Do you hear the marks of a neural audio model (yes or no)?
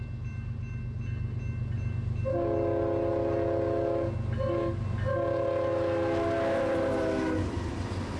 no